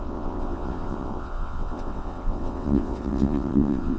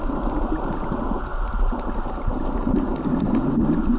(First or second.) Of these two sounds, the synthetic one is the first